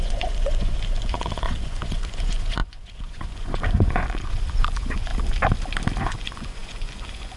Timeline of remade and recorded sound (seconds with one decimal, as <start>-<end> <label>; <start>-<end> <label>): 0.0-5.1 remade; 5.1-6.0 recorded; 6.0-7.4 remade